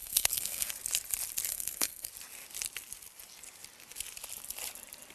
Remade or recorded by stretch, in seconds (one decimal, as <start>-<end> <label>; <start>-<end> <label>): 0.0-0.7 remade; 0.7-1.5 recorded; 1.5-2.1 remade; 2.1-5.1 recorded